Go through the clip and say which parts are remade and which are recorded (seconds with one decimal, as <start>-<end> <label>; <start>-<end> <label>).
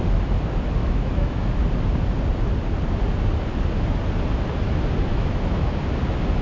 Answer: 0.0-0.8 recorded; 0.8-1.5 remade; 1.5-5.1 recorded; 5.1-5.8 remade; 5.8-6.4 recorded